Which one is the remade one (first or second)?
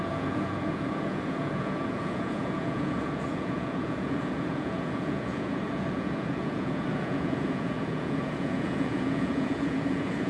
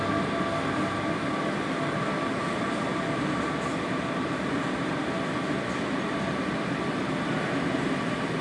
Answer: first